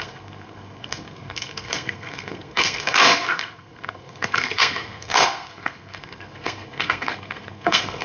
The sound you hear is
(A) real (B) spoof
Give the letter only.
B